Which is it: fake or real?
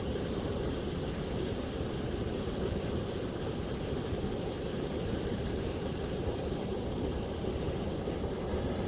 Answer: fake